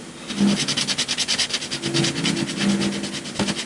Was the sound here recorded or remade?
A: recorded